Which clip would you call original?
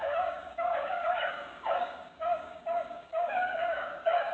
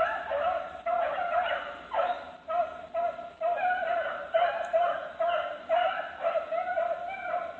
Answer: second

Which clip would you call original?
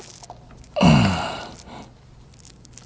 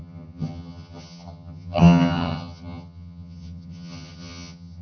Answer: first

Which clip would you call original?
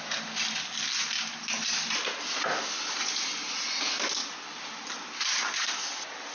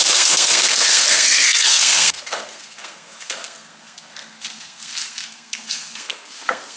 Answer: first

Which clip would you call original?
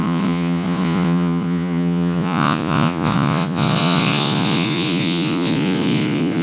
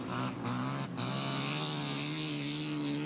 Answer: second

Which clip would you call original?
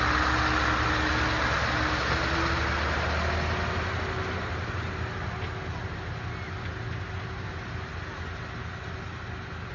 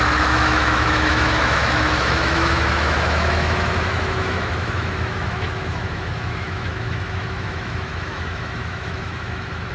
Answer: first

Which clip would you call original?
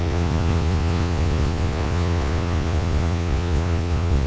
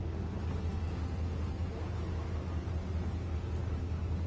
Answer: second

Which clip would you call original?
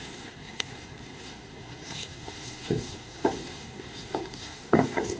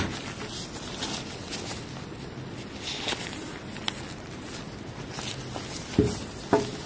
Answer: second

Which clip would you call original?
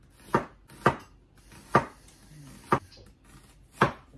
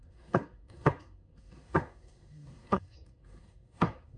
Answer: first